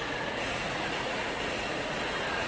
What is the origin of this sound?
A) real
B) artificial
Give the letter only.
B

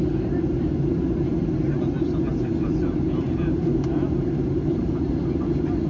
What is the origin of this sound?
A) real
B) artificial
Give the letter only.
A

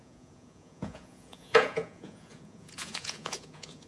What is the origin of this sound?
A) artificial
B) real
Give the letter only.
A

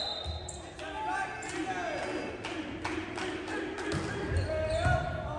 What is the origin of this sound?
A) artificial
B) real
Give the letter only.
B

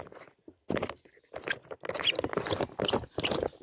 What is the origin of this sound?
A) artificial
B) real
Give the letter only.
B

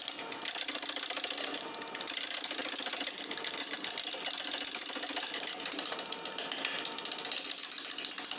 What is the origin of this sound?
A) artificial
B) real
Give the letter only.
B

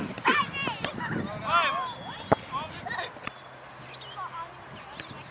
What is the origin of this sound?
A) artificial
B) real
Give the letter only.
B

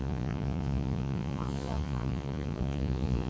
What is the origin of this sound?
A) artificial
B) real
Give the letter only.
A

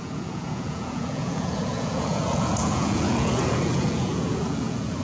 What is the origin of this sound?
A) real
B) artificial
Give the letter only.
B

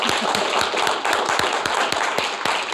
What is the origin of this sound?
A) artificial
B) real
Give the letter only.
B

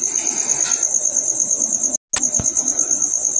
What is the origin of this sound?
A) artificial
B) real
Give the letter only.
B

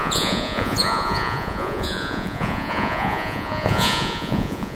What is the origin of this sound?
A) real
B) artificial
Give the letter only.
B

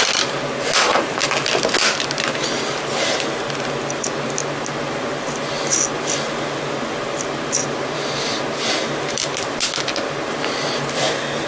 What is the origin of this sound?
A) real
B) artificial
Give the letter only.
A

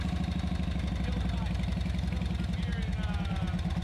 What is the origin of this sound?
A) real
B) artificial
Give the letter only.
A